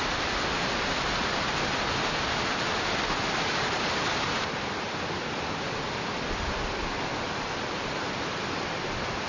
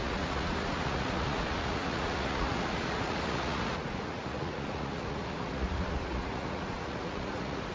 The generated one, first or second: second